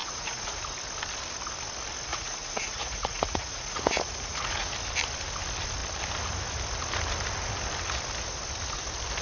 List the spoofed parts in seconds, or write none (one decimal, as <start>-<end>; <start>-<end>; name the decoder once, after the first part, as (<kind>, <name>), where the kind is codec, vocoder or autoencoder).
0.0-0.6 (vocoder, Vocos); 2.1-4.7